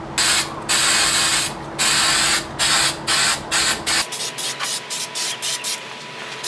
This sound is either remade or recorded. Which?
recorded